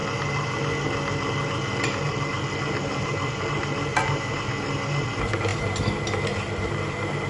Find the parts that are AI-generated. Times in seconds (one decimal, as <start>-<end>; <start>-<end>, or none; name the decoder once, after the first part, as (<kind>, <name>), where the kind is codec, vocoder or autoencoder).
none